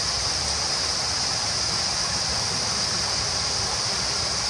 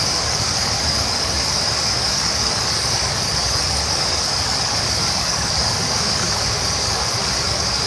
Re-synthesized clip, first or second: second